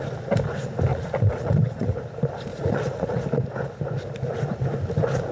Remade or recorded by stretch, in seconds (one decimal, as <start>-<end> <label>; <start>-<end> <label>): 0.0-0.9 recorded; 0.9-2.0 remade; 2.0-2.5 recorded; 2.5-3.2 remade; 3.2-5.3 recorded